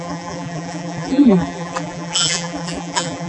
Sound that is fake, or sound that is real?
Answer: fake